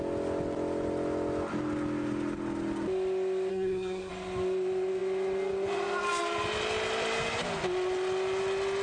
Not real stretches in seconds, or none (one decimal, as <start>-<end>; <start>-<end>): 3.5-4.1